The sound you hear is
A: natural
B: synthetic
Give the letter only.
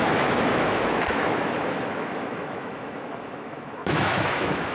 B